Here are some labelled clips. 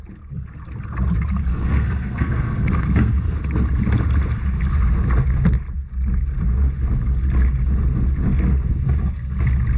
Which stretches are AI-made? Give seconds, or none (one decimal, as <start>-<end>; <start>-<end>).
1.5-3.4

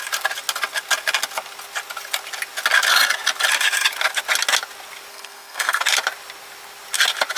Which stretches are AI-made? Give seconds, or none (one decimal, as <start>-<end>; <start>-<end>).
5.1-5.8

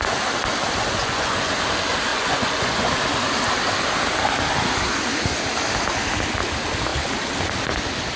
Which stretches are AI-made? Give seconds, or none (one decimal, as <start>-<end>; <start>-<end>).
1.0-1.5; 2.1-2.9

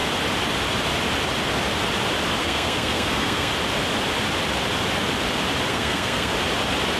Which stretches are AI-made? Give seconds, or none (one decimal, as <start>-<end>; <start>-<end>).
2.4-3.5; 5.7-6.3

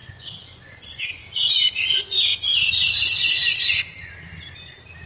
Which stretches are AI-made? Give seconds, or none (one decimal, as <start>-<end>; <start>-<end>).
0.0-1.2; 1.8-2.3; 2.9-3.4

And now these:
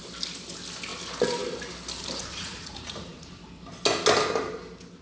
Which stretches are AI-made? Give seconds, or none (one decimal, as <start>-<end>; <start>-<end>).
2.2-3.3

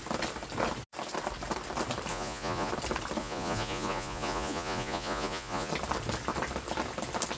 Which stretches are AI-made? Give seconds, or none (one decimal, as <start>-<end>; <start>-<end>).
2.1-2.7; 3.2-5.7

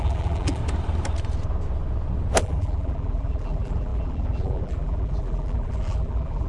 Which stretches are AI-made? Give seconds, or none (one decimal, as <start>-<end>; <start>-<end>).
0.0-0.6; 2.4-6.5